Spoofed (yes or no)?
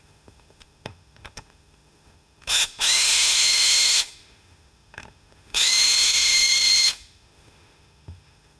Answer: yes